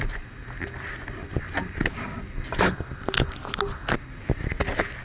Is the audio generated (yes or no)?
no